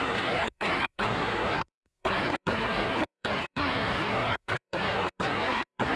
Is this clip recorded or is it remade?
remade